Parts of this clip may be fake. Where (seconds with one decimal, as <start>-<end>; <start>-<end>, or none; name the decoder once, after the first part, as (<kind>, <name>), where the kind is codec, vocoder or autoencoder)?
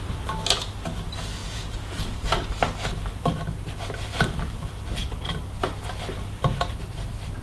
1.4-2.2 (vocoder, Vocos)